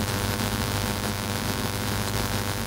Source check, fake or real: fake